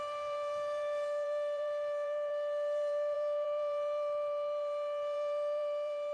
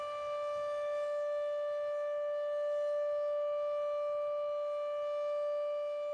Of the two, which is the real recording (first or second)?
second